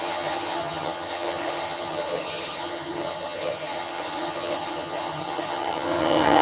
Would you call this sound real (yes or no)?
no